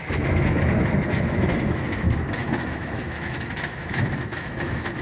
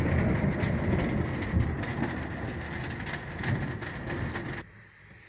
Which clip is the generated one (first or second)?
first